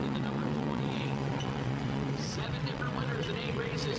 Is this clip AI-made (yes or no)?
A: yes